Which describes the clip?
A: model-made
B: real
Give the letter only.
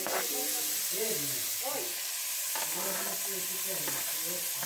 B